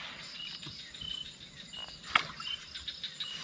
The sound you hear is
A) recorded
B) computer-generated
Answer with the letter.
A